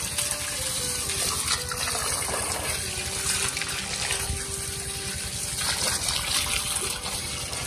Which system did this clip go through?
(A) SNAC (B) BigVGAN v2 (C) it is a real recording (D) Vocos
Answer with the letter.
C